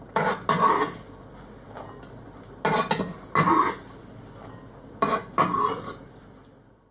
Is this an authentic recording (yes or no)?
yes